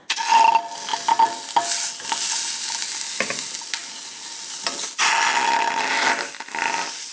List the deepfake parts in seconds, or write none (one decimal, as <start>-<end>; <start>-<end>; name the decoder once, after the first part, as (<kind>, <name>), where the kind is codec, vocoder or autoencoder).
none